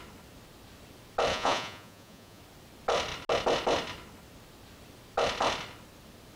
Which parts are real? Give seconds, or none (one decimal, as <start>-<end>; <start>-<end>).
0.0-1.3; 2.4-6.4